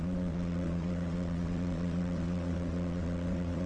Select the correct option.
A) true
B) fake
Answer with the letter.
B